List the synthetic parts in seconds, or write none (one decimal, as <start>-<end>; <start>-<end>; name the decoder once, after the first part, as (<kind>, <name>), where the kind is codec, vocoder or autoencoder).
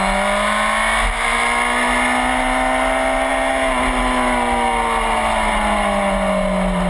none